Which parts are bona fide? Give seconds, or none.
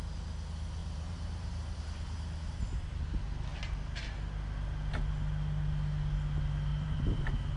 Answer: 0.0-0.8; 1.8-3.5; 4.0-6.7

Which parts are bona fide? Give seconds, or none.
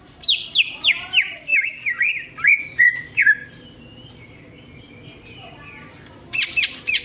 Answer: 1.5-2.6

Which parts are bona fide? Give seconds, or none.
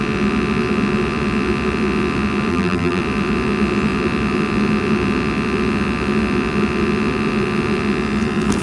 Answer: 0.0-2.5; 3.0-8.6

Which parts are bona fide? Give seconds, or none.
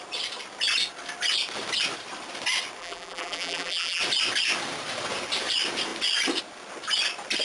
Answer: 0.0-2.8; 4.0-7.4